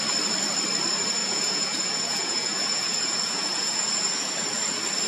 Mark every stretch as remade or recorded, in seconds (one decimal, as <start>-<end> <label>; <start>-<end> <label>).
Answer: 0.0-1.2 recorded; 1.2-4.3 remade; 4.3-5.1 recorded